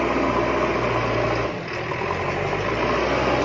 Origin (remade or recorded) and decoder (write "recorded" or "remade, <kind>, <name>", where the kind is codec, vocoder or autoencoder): recorded